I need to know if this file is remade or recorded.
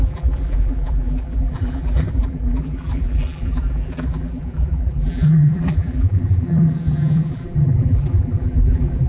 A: remade